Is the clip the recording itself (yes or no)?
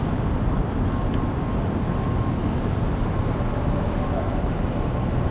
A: yes